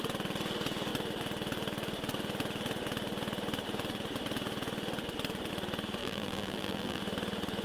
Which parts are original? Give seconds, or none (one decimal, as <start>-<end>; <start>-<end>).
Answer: 0.0-6.0; 7.0-7.6